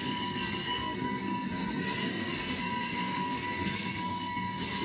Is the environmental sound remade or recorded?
remade